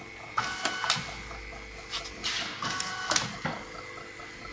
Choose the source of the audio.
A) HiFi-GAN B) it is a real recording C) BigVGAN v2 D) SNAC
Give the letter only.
B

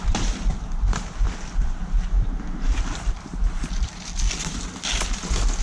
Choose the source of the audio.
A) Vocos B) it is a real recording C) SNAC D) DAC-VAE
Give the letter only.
B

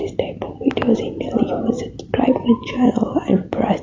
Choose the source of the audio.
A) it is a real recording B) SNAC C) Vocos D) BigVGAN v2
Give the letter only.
A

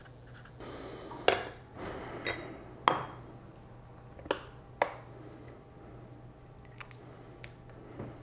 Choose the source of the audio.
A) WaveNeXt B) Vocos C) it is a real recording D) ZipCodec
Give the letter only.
C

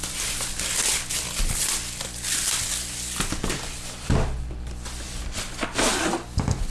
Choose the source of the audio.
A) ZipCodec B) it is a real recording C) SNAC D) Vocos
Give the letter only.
B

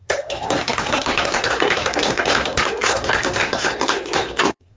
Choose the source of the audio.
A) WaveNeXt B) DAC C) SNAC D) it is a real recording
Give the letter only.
C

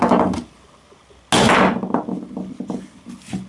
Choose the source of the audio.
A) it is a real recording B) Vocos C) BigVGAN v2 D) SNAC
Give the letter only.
A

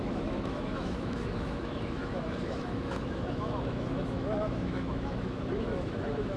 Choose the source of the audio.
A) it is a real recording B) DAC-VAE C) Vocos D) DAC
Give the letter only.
B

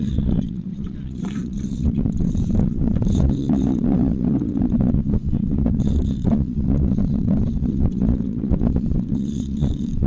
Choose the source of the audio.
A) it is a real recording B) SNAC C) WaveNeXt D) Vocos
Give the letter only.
C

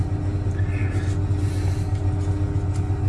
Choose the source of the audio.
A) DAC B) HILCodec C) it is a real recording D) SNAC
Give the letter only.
C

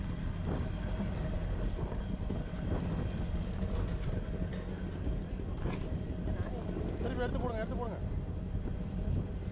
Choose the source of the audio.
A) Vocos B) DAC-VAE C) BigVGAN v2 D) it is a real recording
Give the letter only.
D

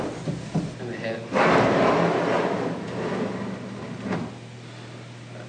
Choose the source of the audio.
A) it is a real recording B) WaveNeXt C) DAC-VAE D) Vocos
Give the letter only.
A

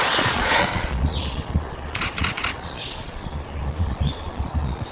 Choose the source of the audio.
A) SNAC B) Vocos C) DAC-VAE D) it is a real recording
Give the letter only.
B